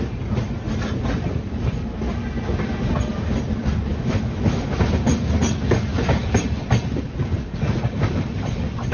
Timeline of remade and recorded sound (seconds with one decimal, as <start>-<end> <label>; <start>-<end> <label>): 0.0-3.9 recorded; 3.9-4.7 remade; 4.7-8.9 recorded